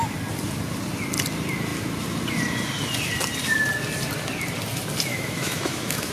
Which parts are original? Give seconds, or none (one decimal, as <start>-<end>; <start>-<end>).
0.0-5.1